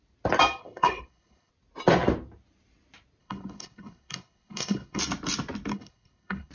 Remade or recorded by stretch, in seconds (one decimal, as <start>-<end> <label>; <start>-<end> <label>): 0.0-0.6 recorded; 0.6-1.5 remade; 1.5-3.2 recorded; 3.2-5.0 remade; 5.0-5.7 recorded; 5.7-6.5 remade